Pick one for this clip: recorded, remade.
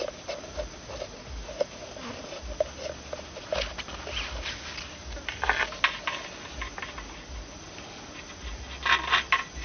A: recorded